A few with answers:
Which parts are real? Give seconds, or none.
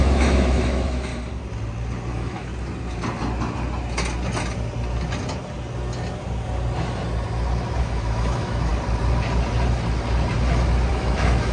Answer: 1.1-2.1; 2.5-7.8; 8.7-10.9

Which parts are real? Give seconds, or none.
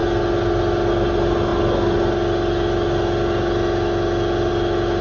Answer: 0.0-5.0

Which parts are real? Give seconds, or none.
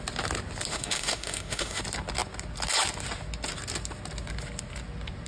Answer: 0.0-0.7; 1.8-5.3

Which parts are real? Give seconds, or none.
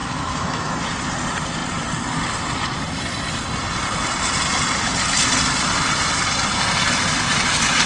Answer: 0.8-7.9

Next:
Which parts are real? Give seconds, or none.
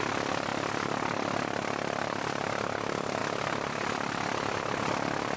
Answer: 0.0-5.4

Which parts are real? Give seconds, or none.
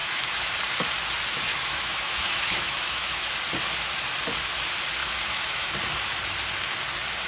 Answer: 0.5-1.5; 3.3-5.0; 5.7-7.3